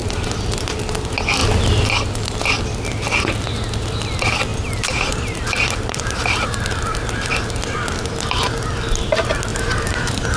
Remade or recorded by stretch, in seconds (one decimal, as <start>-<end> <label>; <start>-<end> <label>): 0.0-4.5 recorded; 4.5-7.3 remade; 7.3-9.5 recorded; 9.5-10.4 remade